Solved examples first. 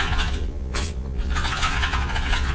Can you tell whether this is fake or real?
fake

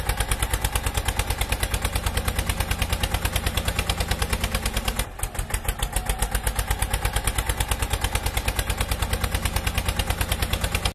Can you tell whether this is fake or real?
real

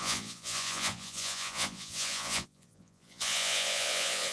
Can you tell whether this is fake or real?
fake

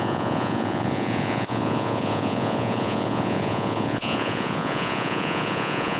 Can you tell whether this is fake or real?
fake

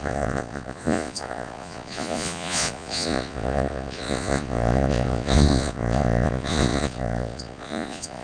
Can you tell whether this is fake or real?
fake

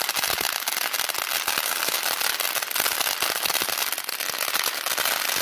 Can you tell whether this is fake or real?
real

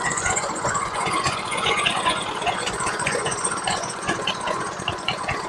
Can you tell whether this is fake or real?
fake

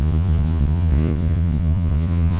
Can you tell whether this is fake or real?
fake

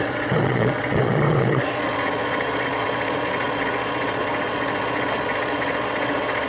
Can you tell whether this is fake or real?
fake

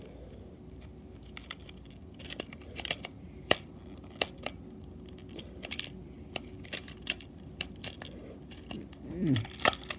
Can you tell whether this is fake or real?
real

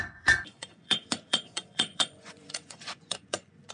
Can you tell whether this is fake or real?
fake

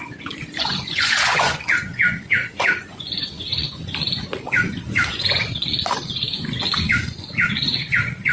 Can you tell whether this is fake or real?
fake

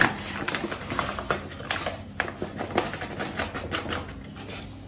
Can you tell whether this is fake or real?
real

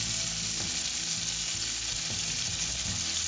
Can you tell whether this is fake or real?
real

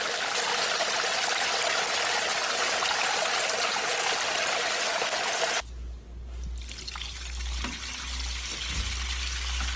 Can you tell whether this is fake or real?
real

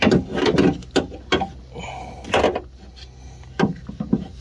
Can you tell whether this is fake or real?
real